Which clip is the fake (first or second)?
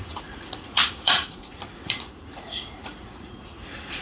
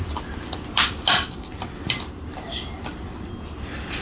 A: first